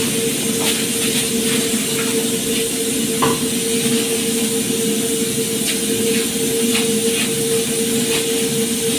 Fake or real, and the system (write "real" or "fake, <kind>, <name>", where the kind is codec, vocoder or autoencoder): real